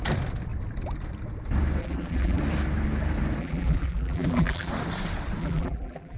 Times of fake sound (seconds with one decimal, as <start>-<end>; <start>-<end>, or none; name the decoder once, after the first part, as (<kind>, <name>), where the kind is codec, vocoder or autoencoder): 1.8-2.4 (vocoder, BigVGAN v2); 3.4-4.7; 5.4-6.2